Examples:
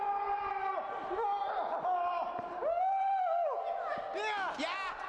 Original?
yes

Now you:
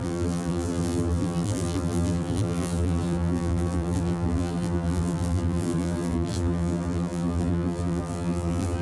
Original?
no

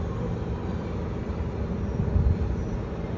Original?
yes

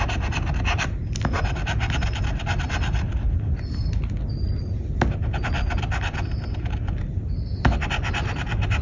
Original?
yes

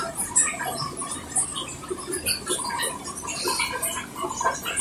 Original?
yes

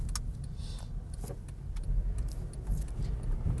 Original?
yes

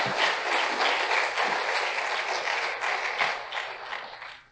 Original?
yes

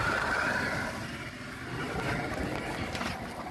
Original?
no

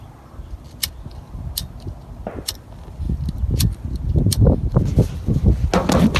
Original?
yes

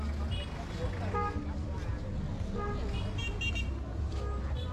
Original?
yes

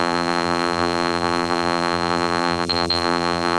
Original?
no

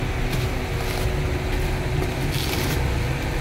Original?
yes